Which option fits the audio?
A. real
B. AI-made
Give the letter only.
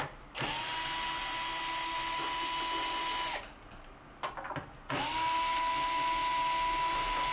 A